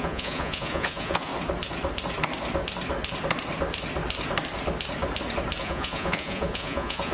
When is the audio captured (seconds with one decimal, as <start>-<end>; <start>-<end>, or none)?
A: 1.3-5.6